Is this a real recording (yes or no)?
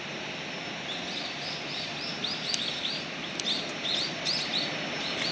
yes